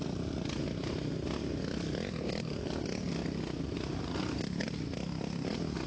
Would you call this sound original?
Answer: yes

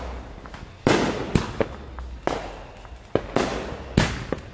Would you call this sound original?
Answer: yes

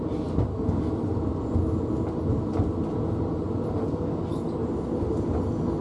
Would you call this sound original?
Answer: yes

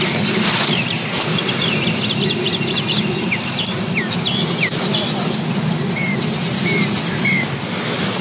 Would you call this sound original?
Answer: yes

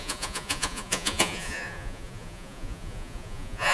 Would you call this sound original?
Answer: no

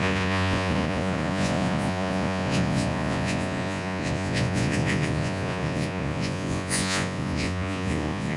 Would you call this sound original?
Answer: no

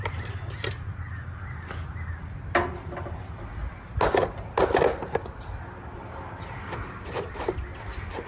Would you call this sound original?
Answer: yes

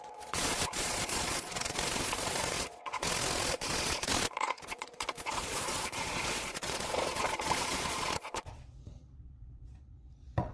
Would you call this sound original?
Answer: no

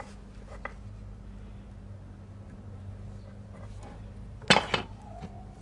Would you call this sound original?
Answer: yes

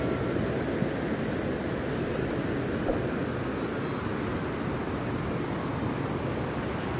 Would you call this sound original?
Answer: yes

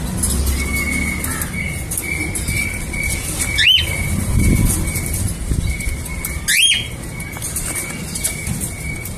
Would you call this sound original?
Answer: yes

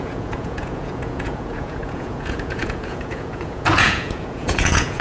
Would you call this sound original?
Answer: no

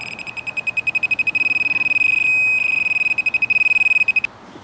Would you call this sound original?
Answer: yes